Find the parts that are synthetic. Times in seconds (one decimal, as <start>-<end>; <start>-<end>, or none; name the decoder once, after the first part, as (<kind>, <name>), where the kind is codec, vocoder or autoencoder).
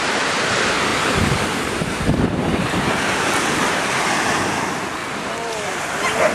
0.9-2.9 (vocoder, BigVGAN v2); 5.0-5.8